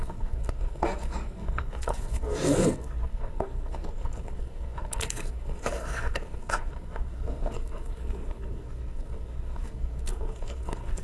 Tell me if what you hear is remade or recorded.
remade